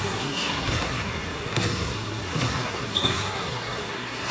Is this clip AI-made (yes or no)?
yes